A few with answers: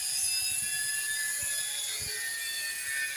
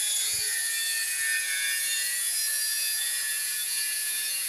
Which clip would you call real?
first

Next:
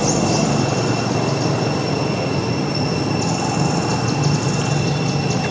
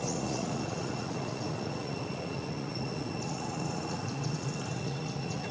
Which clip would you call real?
first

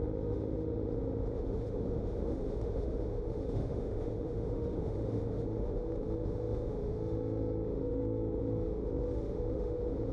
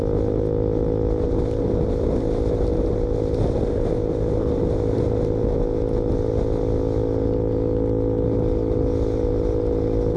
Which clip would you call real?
second